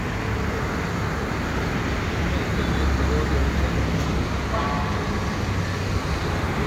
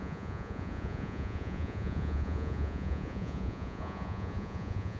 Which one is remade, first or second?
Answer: second